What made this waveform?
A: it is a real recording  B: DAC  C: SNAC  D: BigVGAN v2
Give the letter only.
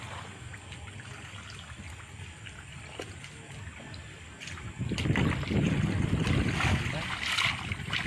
A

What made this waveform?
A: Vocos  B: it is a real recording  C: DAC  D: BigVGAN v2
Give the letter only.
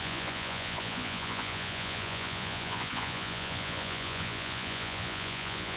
A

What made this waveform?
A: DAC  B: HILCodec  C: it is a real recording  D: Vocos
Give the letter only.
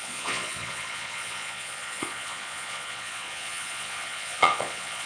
D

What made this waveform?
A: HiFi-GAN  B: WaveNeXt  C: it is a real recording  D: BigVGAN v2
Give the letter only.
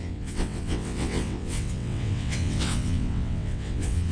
B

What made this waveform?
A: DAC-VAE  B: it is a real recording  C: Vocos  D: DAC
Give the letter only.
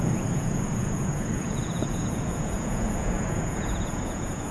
C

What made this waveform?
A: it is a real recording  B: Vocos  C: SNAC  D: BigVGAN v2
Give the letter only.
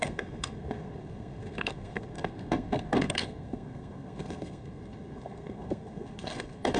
C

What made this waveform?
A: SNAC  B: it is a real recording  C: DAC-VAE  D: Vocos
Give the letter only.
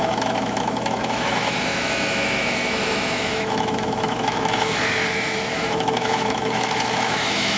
C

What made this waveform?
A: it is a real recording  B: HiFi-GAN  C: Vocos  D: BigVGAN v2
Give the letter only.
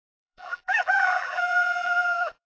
D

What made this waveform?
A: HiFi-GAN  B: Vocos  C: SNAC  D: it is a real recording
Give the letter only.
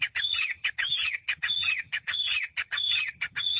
A